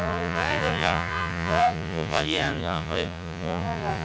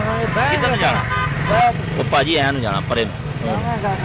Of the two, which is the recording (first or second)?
second